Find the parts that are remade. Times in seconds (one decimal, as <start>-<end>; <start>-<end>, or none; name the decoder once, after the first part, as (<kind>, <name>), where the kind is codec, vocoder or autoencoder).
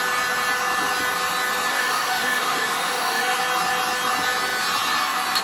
1.7-3.4 (autoencoder, DAC-VAE)